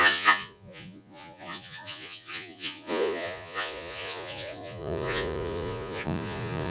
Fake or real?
fake